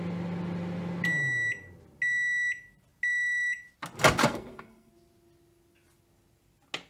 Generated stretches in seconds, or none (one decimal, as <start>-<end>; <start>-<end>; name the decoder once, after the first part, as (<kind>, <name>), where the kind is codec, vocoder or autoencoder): 4.2-4.9 (codec, SNAC)